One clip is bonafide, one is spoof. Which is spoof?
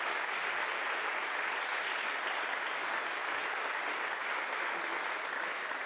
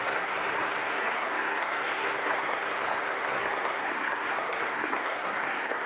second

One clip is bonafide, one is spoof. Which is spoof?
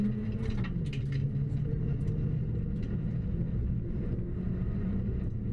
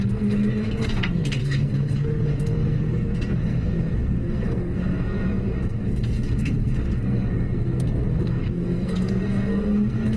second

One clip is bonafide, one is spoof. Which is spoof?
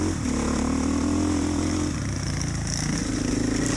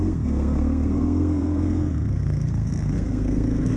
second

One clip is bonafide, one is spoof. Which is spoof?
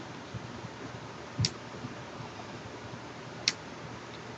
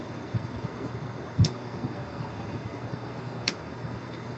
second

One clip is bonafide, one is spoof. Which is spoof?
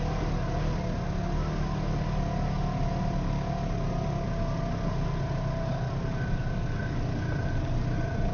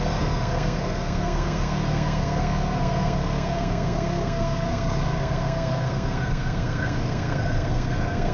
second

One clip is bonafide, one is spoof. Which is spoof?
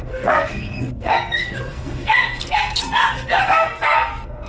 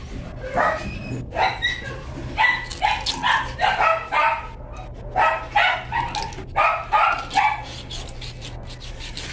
first